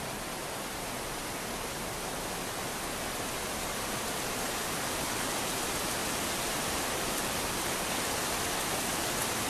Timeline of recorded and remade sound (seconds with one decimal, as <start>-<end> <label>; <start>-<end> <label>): 0.0-6.0 recorded; 6.0-7.5 remade; 7.5-9.5 recorded